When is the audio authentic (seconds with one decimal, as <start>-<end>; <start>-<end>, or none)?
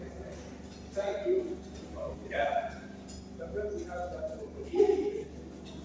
0.0-2.2; 3.5-4.1; 4.8-5.8